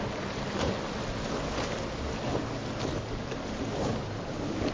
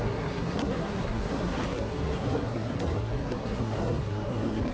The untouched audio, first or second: first